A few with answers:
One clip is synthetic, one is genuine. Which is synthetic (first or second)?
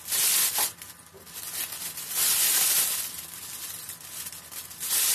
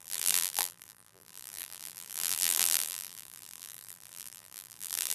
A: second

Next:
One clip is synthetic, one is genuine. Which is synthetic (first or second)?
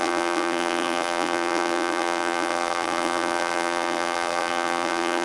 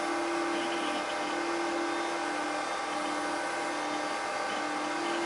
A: first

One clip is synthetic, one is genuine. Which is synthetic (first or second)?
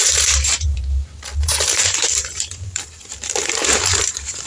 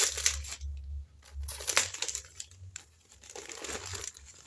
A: first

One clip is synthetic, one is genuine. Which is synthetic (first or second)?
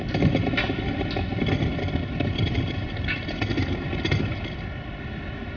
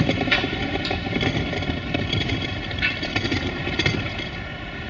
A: second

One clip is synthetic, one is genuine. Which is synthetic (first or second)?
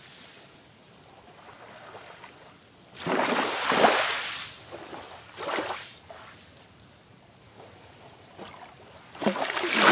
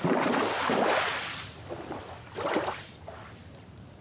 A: second